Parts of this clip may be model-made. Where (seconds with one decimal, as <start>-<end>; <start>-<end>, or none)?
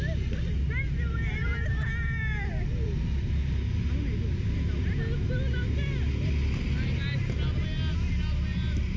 1.4-3.0